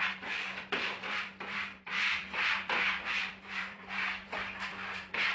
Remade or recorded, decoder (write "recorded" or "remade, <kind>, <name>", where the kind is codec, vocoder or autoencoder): remade, vocoder, BigVGAN v2